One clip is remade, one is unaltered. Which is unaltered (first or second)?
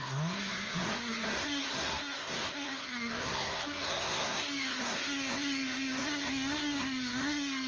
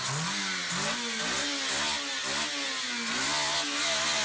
second